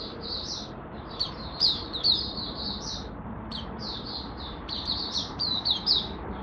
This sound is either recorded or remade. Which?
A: remade